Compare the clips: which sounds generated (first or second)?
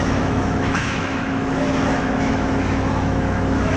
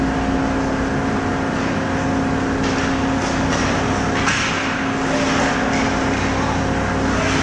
first